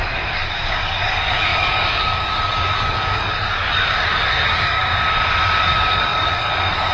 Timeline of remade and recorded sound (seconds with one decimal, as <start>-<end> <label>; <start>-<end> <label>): 0.0-4.9 remade; 4.9-5.6 recorded; 5.6-6.9 remade